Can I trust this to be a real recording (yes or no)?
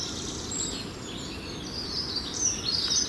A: yes